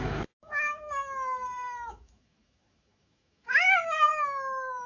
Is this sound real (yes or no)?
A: no